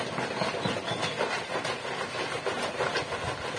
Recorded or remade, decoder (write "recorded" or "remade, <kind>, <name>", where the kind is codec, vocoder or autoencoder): recorded